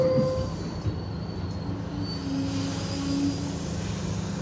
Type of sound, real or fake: real